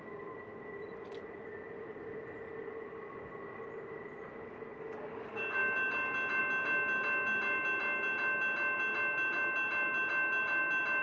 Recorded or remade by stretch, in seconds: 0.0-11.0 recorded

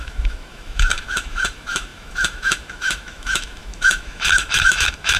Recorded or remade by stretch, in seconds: 0.0-5.2 remade

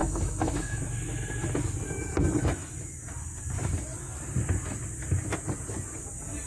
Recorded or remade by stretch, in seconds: 0.0-0.8 remade; 0.8-6.5 recorded

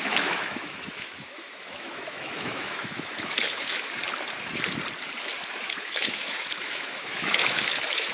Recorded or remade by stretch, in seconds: 0.0-4.0 remade; 4.0-5.6 recorded; 5.6-8.1 remade